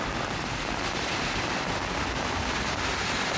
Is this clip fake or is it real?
fake